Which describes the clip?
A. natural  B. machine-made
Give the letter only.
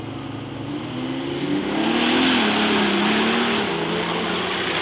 A